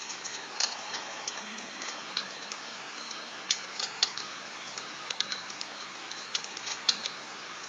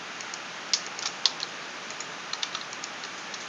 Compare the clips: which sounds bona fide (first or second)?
second